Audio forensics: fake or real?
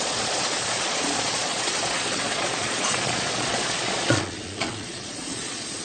fake